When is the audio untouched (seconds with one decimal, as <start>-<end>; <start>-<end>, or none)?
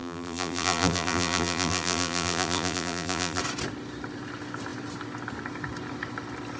3.4-6.6